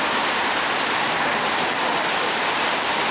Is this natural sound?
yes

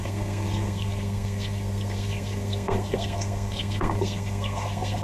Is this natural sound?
no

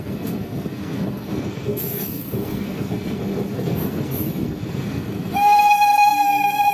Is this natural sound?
no